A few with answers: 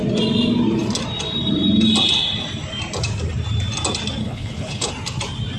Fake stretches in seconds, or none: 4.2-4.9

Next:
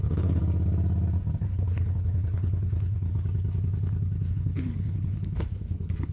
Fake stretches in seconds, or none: 0.0-0.4; 1.4-3.1; 4.3-6.1

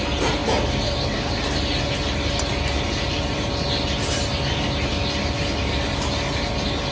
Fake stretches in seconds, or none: none

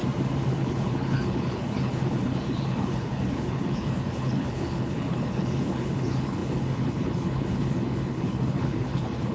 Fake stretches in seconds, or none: 0.5-9.3

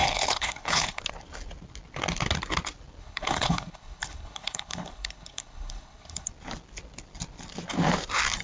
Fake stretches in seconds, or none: 0.0-1.0; 3.0-6.3

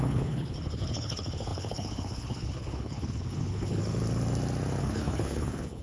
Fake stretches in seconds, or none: 0.0-3.8; 4.8-5.8

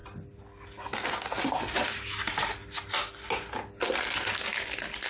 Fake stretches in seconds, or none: none

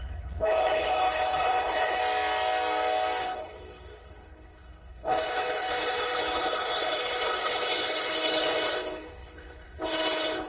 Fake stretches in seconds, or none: 0.0-2.0; 3.2-10.5